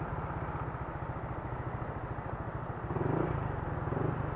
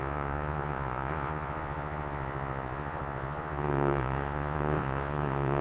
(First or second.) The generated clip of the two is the second